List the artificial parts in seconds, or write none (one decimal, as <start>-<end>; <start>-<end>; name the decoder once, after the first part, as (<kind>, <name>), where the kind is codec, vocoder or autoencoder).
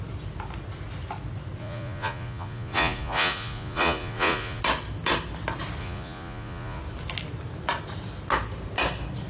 1.6-4.6 (vocoder, Vocos); 5.8-6.8